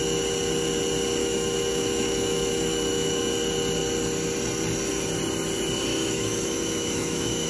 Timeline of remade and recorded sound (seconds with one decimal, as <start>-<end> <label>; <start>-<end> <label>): 0.0-1.2 recorded; 1.2-3.3 remade; 3.3-5.9 recorded; 5.9-7.5 remade